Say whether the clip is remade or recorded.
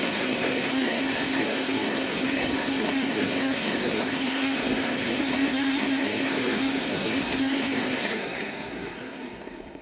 remade